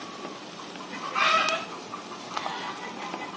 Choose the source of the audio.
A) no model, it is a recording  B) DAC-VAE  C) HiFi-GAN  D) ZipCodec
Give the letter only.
A